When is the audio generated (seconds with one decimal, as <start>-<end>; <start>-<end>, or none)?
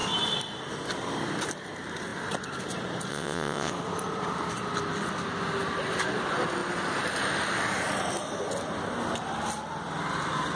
3.1-3.7